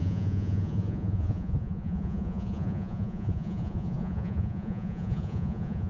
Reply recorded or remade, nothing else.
remade